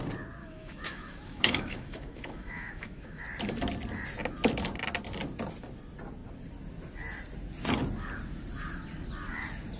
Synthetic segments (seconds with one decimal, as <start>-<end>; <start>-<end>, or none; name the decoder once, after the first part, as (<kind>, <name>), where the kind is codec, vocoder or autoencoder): 0.4-3.2 (autoencoder, DAC-VAE)